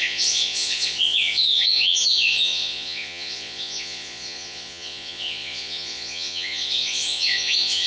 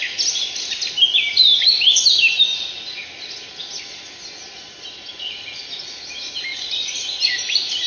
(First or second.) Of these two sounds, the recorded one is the second